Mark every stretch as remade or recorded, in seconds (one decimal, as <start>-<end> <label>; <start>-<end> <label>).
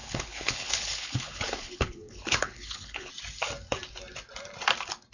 0.0-3.1 remade; 3.1-5.1 recorded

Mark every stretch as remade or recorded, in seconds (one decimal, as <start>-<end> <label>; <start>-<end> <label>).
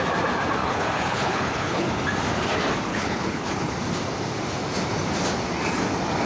0.0-0.6 recorded; 0.6-1.9 remade; 1.9-2.9 recorded; 2.9-3.7 remade; 3.7-6.3 recorded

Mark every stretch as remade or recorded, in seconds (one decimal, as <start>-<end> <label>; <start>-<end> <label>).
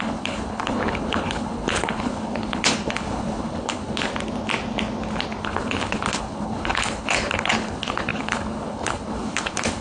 0.0-4.1 remade; 4.1-5.4 recorded; 5.4-9.8 remade